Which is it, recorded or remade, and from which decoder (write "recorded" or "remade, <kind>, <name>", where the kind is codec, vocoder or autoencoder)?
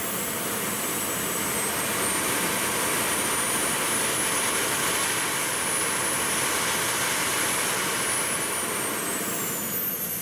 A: recorded